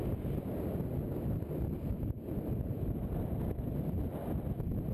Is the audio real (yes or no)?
yes